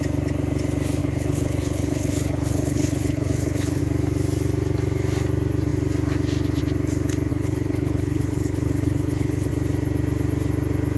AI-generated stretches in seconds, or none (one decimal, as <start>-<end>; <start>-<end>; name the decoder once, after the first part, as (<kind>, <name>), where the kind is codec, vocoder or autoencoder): 1.0-3.8 (codec, HILCodec); 7.3-9.5